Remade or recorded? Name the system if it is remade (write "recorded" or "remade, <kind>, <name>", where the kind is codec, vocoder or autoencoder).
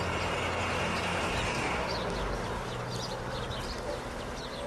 recorded